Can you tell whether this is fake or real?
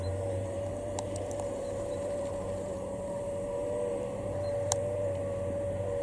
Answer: fake